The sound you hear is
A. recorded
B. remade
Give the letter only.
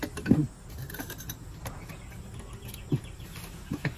A